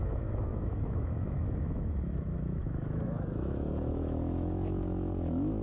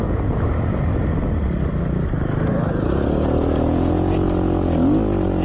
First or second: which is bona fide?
second